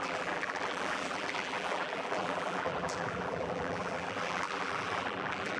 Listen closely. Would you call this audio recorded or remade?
remade